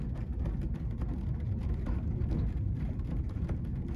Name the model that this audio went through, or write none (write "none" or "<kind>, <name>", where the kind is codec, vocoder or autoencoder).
none